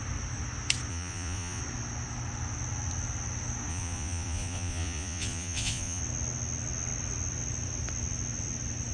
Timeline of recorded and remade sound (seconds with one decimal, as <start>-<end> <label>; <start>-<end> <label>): 0.0-0.9 recorded; 0.9-1.6 remade; 1.6-3.7 recorded; 3.7-6.0 remade; 6.0-8.9 recorded